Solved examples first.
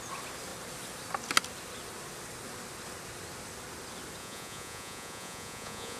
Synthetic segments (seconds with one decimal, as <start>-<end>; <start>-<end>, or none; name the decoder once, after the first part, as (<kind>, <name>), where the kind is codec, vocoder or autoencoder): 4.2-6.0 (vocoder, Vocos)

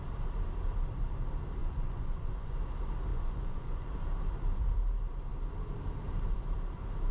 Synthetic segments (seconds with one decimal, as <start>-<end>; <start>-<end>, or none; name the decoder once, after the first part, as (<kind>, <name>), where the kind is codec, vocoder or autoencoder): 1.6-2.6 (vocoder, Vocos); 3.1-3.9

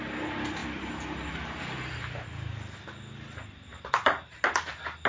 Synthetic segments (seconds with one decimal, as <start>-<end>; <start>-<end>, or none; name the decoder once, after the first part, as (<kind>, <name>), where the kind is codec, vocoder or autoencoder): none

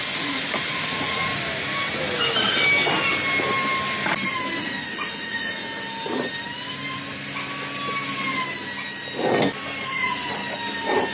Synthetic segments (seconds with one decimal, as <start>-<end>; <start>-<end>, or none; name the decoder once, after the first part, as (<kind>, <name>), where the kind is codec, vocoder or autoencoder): 0.0-1.3 (vocoder, Vocos); 4.6-5.6; 9.8-10.4

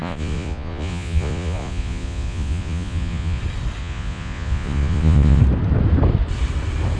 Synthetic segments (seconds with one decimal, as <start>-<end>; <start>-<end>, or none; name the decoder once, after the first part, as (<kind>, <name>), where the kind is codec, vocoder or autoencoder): 0.0-3.4 (vocoder, Vocos); 3.8-5.4

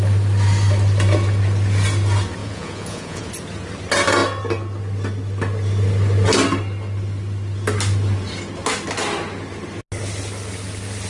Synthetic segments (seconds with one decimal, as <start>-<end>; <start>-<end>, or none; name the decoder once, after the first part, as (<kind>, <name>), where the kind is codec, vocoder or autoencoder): 2.4-3.3 (vocoder, Vocos)

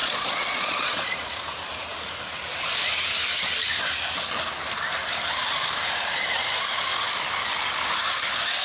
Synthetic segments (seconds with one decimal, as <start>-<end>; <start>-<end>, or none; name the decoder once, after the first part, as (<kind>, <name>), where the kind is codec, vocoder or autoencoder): 0.0-1.3 (vocoder, Vocos)

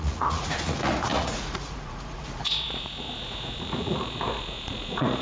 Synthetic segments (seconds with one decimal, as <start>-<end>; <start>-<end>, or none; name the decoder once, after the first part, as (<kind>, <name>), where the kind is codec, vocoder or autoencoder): 0.0-5.2 (vocoder, Vocos)